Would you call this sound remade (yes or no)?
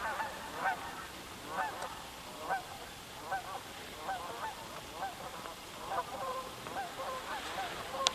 yes